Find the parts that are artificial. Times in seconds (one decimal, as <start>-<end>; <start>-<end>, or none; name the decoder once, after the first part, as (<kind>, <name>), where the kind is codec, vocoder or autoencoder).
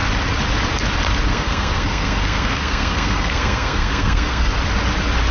1.3-4.5 (codec, SNAC)